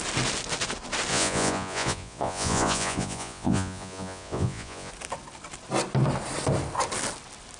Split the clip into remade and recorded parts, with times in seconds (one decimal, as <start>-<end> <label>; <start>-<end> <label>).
0.0-1.1 recorded; 1.1-4.9 remade; 4.9-7.6 recorded